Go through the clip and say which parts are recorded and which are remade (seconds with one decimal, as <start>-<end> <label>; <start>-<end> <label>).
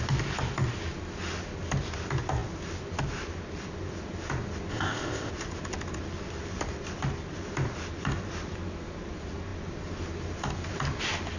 0.0-4.7 recorded; 4.7-5.3 remade; 5.3-11.4 recorded